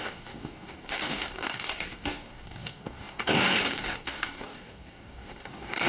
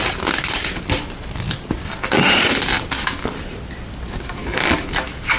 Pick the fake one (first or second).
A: first